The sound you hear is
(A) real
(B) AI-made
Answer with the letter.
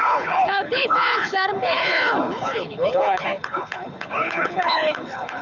B